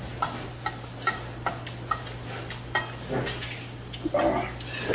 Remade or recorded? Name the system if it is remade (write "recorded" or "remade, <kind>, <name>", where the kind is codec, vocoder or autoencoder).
recorded